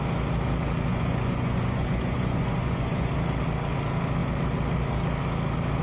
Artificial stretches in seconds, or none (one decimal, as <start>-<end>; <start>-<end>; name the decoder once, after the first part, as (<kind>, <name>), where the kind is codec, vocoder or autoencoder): 0.9-3.1 (vocoder, Vocos)